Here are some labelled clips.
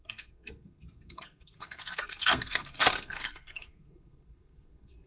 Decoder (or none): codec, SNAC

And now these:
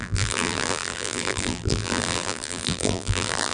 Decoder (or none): vocoder, BigVGAN v2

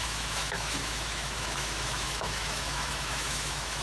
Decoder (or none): autoencoder, DAC-VAE